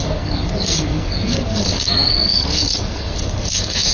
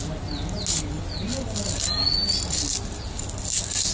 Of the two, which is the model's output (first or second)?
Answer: first